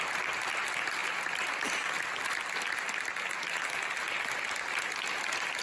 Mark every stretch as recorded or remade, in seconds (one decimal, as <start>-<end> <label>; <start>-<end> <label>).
0.0-5.6 recorded

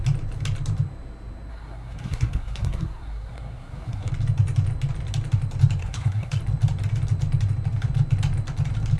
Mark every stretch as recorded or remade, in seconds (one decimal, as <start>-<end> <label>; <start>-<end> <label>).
0.0-1.5 recorded; 1.5-4.1 remade; 4.1-5.8 recorded; 5.8-6.4 remade; 6.4-9.0 recorded

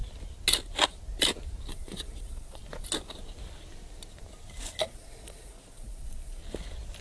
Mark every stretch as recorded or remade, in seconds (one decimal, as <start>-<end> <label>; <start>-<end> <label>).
0.0-1.7 recorded; 1.7-2.6 remade; 2.6-4.8 recorded; 4.8-6.4 remade; 6.4-7.0 recorded